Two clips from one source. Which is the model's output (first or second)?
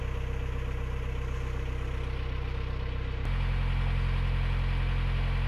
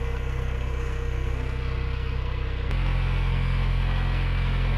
second